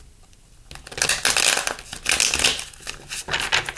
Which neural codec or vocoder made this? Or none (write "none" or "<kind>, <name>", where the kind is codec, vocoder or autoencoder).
none